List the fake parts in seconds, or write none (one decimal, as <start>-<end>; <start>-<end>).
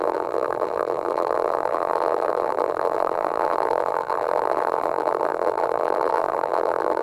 0.0-7.0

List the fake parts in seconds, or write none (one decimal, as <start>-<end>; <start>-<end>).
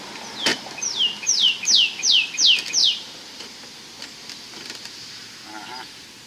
0.5-1.6; 2.8-4.0